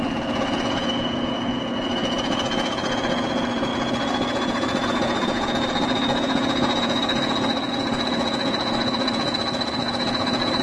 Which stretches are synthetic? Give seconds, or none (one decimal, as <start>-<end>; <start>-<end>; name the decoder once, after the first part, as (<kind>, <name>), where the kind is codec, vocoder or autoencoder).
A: 0.0-10.6 (vocoder, Vocos)